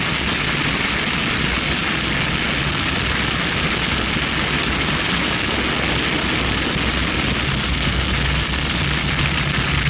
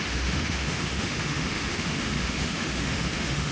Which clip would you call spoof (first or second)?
second